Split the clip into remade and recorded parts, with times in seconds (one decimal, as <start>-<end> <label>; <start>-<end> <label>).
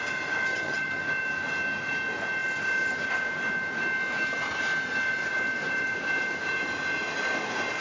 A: 0.0-0.5 recorded; 0.5-1.0 remade; 1.0-7.8 recorded